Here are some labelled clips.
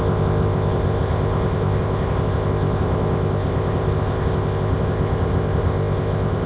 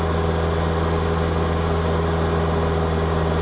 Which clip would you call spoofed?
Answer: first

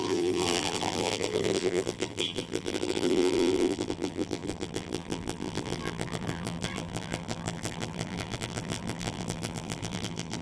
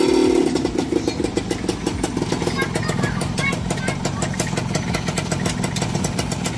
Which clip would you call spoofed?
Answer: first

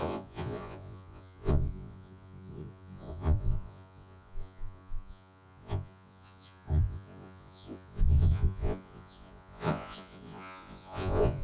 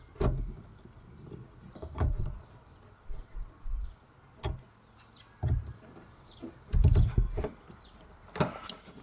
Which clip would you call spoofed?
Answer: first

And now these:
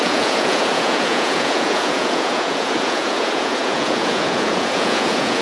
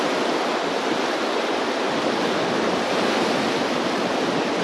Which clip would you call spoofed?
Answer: first